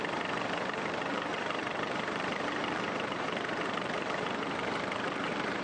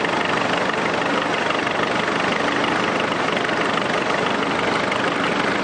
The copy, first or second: first